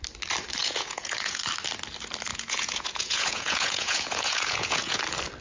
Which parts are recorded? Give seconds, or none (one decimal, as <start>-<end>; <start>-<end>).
0.0-0.6; 1.4-2.3; 5.0-5.4